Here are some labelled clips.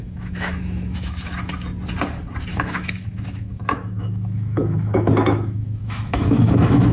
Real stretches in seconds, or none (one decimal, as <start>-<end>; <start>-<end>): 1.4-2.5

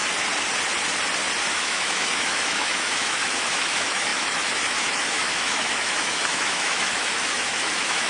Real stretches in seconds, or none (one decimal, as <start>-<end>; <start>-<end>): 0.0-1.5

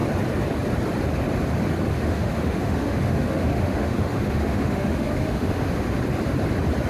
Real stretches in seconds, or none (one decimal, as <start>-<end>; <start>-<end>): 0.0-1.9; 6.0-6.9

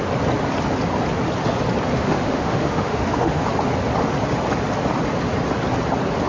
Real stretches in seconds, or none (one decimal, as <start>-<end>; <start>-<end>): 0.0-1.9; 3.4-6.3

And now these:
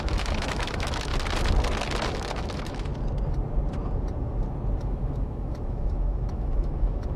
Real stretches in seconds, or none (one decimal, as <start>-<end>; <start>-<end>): 1.1-2.1; 2.9-4.8

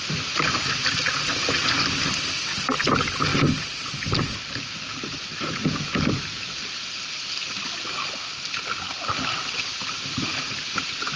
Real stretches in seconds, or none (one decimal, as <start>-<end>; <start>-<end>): 0.0-11.2

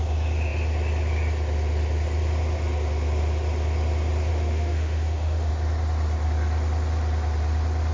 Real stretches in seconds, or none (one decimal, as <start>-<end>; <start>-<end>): 0.0-4.3; 5.5-7.9